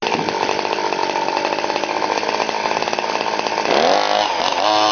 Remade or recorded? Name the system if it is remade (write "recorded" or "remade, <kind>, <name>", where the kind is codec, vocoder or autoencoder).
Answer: recorded